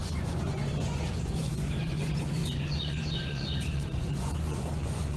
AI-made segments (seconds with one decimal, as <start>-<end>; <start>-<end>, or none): 0.0-5.2